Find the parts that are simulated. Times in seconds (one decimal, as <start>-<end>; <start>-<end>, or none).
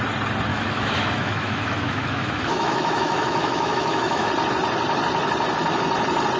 0.5-4.3